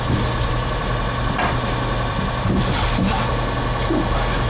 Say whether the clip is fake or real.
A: real